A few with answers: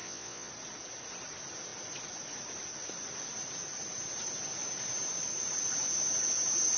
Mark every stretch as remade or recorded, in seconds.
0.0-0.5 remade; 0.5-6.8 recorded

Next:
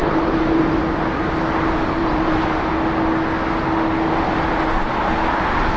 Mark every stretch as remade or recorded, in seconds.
0.0-0.8 remade; 0.8-2.0 recorded; 2.0-2.7 remade; 2.7-5.8 recorded

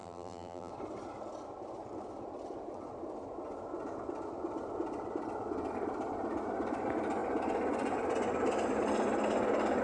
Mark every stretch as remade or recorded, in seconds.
0.0-0.7 remade; 0.7-9.8 recorded

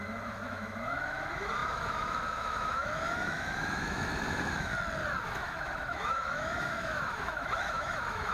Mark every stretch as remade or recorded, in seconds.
0.0-4.7 remade; 4.7-5.2 recorded; 5.2-8.3 remade

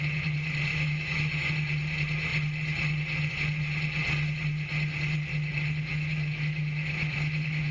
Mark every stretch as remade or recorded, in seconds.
0.0-0.7 recorded; 0.7-1.5 remade; 1.5-5.9 recorded; 5.9-7.7 remade

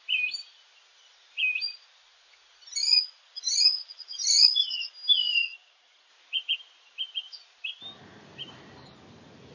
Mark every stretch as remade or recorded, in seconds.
0.0-2.8 recorded; 2.8-4.9 remade; 4.9-5.4 recorded; 5.4-6.1 remade; 6.1-9.5 recorded

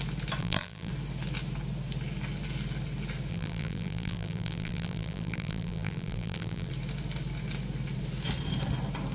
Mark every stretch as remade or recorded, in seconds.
0.0-0.4 recorded; 0.4-0.9 remade; 0.9-3.3 recorded; 3.3-6.7 remade; 6.7-9.1 recorded